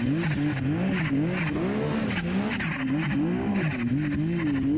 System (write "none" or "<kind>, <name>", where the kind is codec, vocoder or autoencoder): none